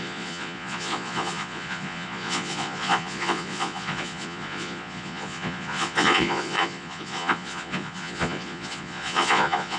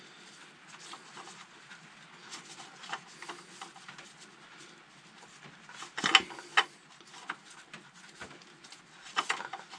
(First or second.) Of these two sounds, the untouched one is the second